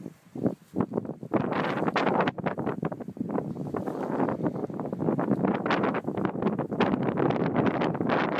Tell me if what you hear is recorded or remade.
recorded